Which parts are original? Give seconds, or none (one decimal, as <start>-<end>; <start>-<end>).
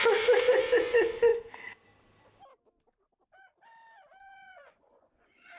1.3-4.2